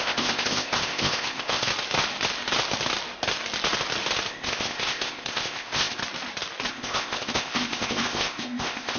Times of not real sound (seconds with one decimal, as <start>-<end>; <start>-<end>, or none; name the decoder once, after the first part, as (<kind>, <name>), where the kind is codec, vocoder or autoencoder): 0.0-1.7 (codec, ZipCodec); 4.3-6.0; 6.7-9.0